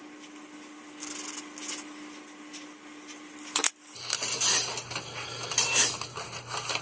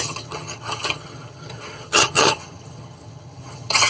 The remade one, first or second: second